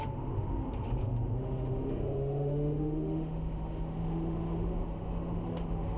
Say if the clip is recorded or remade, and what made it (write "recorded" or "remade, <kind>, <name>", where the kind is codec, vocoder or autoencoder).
remade, autoencoder, DAC-VAE